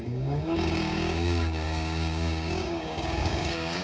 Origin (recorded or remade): remade